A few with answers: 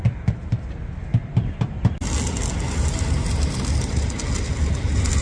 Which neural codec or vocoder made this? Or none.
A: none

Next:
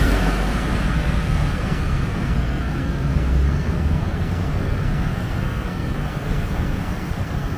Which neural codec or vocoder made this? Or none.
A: codec, SNAC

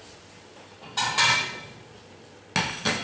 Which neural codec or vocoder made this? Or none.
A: none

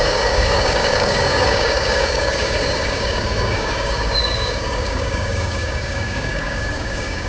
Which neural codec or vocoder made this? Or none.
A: codec, DAC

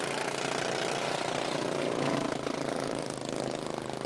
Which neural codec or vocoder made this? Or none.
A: none